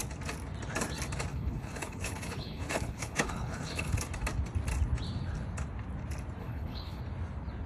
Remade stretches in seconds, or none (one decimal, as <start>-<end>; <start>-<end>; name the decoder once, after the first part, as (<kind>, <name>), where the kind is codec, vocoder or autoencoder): 1.3-4.0 (codec, HILCodec); 6.4-7.0